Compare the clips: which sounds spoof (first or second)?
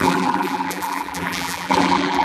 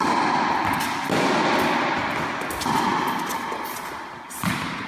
first